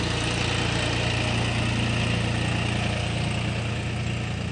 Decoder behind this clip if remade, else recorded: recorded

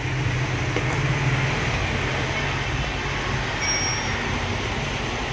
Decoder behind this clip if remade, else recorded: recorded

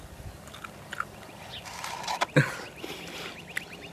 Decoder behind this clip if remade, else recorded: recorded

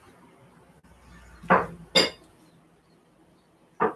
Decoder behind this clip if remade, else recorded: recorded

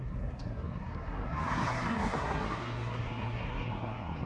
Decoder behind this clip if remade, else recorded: remade, codec, SNAC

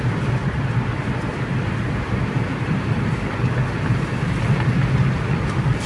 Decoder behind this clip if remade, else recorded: recorded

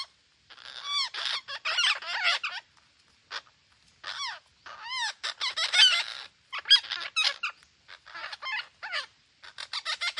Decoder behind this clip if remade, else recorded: recorded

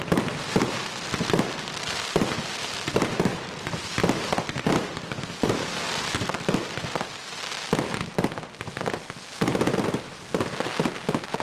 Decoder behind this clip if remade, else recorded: recorded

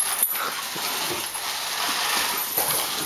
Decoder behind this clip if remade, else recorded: recorded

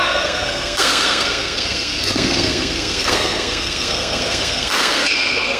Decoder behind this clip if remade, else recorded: remade, codec, SNAC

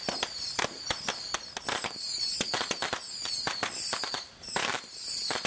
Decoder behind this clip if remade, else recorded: recorded